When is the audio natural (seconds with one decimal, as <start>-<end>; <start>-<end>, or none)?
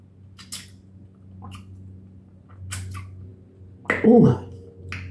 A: 0.0-5.1